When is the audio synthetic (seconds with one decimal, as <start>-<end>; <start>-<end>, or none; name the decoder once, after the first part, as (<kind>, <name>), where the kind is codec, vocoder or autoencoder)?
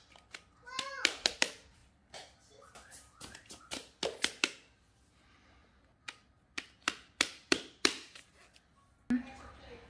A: none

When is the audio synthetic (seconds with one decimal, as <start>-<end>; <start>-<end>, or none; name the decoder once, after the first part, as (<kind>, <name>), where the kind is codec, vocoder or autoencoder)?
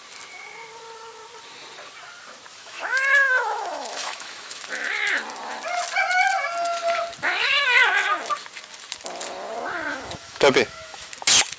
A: 2.5-4.9 (autoencoder, DAC-VAE); 9.9-11.1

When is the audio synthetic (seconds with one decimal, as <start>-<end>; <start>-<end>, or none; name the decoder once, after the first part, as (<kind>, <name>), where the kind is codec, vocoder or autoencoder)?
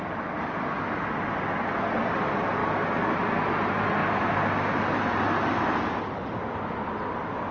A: none